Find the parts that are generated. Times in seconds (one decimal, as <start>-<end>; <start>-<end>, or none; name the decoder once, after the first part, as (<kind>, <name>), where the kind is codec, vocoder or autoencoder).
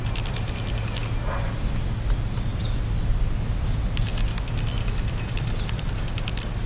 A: none